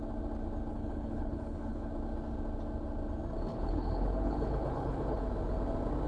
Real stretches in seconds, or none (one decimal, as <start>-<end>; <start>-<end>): 0.0-0.7; 1.9-3.5; 5.2-6.1